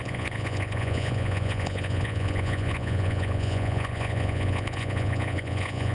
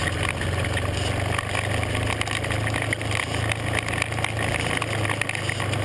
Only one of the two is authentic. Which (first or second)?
second